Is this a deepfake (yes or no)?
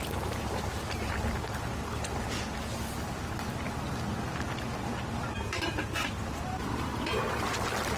no